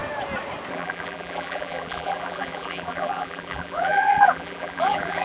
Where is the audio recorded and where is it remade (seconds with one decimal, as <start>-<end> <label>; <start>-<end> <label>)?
0.0-0.7 recorded; 0.7-5.2 remade